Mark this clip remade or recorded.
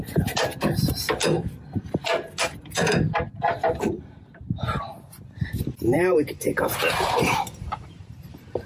remade